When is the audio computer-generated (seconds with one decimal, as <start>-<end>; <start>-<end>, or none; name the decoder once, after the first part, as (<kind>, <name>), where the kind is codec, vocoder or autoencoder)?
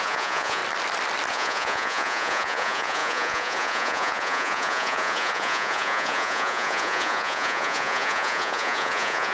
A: 0.0-0.6 (vocoder, Vocos); 1.3-9.3